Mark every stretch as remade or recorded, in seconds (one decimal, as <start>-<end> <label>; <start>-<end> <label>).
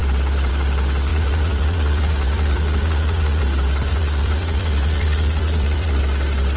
0.0-1.1 recorded; 1.1-3.4 remade; 3.4-3.9 recorded; 3.9-6.0 remade; 6.0-6.6 recorded